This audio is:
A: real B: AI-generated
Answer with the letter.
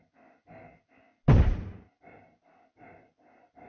A